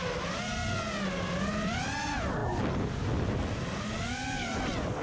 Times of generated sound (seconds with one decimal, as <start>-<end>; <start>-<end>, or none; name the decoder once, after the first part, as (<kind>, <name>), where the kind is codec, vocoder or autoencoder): none